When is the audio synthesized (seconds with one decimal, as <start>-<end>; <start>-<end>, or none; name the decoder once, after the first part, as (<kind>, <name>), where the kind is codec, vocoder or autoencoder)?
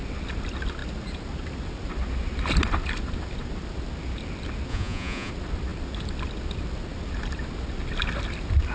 4.7-5.3 (vocoder, Vocos)